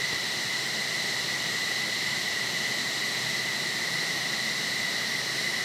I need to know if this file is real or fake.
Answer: fake